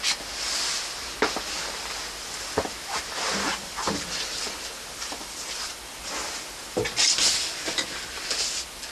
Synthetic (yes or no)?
no